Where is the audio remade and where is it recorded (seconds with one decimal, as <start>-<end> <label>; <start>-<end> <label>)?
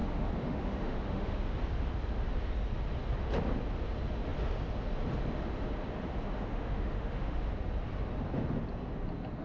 0.0-1.4 remade; 1.4-6.5 recorded; 6.5-7.5 remade; 7.5-9.4 recorded